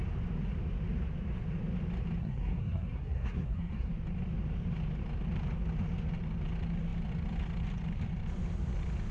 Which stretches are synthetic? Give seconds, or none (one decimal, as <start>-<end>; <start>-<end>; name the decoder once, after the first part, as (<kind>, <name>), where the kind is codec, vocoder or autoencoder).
2.2-3.9 (codec, SNAC)